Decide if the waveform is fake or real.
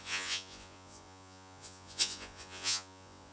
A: fake